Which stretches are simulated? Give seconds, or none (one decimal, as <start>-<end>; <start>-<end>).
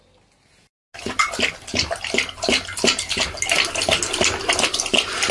none